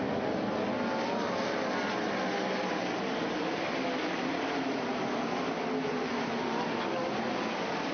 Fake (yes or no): no